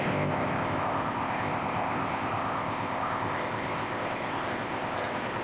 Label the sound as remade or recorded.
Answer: remade